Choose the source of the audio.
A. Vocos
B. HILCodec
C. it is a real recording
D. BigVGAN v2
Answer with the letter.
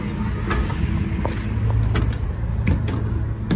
C